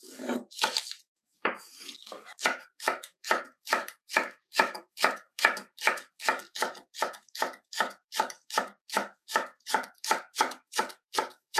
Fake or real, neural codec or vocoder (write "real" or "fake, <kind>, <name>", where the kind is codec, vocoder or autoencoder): fake, codec, DAC